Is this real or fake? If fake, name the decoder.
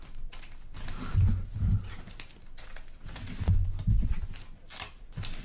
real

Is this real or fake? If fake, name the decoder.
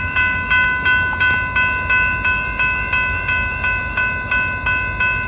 real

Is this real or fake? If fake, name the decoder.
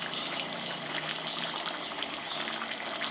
real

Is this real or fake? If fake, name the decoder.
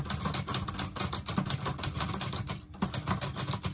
real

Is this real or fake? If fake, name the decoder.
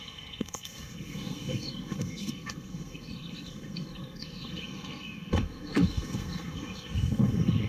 fake, codec, SNAC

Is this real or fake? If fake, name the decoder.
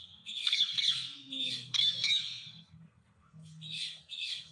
fake, codec, SNAC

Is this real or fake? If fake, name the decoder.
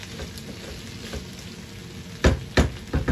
real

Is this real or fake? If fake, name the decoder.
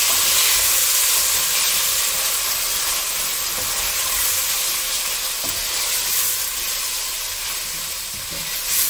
real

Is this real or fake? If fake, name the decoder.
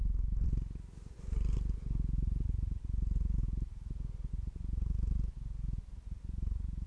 real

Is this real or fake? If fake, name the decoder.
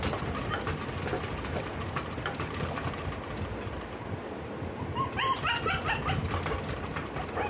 real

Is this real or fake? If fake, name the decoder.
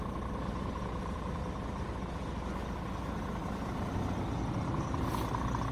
real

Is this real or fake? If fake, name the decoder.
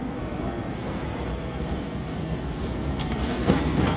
fake, codec, SNAC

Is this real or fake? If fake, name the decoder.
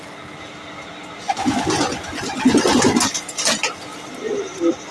real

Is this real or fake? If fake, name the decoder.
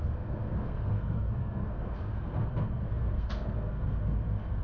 fake, codec, SNAC